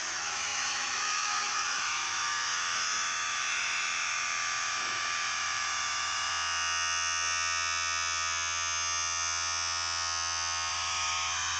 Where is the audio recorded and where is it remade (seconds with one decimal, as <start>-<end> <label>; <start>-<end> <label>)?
0.0-6.3 remade; 6.3-10.7 recorded; 10.7-11.6 remade